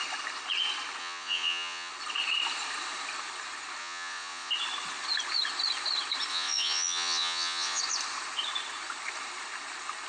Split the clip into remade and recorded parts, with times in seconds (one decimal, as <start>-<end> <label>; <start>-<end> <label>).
0.0-1.0 recorded; 1.0-1.9 remade; 1.9-3.8 recorded; 3.8-4.5 remade; 4.5-6.3 recorded; 6.3-7.8 remade; 7.8-10.1 recorded

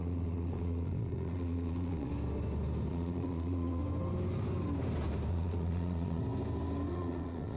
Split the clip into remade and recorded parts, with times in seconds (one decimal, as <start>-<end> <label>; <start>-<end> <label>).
0.0-2.1 remade; 2.1-2.9 recorded; 2.9-3.8 remade; 3.8-5.3 recorded; 5.3-6.2 remade; 6.2-6.9 recorded; 6.9-7.6 remade

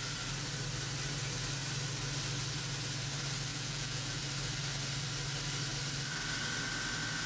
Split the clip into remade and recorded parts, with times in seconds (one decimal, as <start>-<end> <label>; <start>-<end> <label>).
0.0-3.5 recorded; 3.5-4.2 remade; 4.2-7.3 recorded

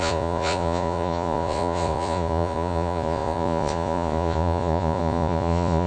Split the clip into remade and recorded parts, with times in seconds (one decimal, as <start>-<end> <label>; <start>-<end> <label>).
0.0-5.9 remade

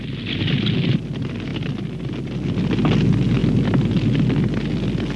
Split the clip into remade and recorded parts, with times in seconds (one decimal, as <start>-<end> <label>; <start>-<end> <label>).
0.0-5.2 recorded

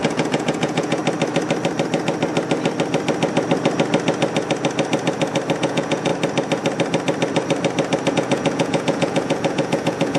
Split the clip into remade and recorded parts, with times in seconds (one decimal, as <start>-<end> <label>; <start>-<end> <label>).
0.0-1.0 remade; 1.0-5.6 recorded; 5.6-6.1 remade; 6.1-8.1 recorded; 8.1-10.2 remade